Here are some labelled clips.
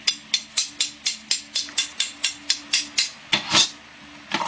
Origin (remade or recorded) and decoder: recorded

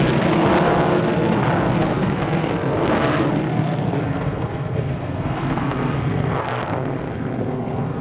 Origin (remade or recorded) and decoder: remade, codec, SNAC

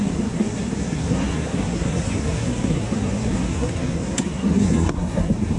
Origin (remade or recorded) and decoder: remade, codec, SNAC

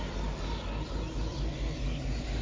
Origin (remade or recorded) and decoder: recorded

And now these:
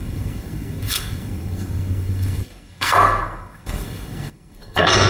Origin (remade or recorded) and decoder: remade, codec, SNAC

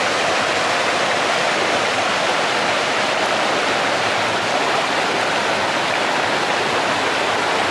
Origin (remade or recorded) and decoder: recorded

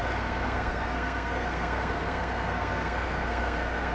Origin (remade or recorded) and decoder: remade, codec, SNAC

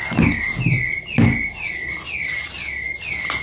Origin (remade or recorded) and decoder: recorded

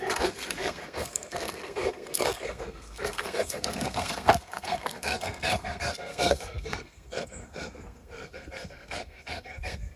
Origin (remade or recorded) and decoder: remade, codec, SNAC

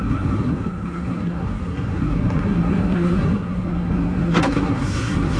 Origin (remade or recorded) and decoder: remade, codec, SNAC